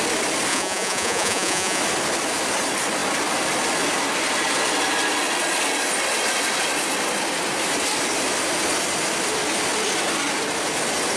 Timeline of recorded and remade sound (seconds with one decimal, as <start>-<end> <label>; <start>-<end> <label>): 0.0-0.5 recorded; 0.5-1.8 remade; 1.8-11.2 recorded

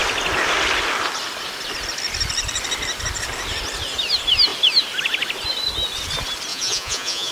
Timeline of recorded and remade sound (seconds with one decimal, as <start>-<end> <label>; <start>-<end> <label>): 0.0-6.5 recorded; 6.5-7.3 remade